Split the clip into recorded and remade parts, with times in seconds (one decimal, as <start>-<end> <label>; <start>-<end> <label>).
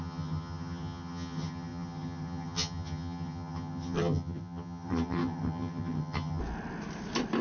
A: 0.0-6.4 remade; 6.4-7.4 recorded